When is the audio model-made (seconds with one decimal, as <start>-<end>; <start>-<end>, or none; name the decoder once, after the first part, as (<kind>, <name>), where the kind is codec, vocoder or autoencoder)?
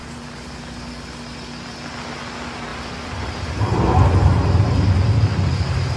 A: 2.7-4.9 (vocoder, BigVGAN v2)